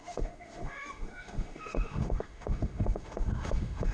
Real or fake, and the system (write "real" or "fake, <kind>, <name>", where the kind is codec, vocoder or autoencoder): fake, autoencoder, DAC-VAE